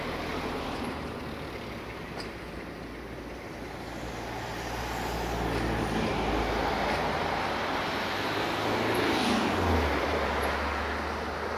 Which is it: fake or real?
real